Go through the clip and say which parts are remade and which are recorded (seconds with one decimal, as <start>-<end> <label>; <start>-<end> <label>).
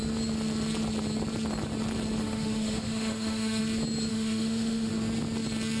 0.0-2.2 recorded; 2.2-3.6 remade; 3.6-4.1 recorded; 4.1-4.9 remade; 4.9-5.8 recorded